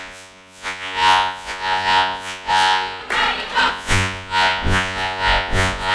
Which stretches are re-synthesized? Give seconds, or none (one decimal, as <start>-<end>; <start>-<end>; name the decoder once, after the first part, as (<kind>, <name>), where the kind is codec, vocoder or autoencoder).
0.0-3.0 (vocoder, Vocos); 3.7-5.9